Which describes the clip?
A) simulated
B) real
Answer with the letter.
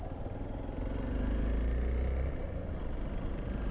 B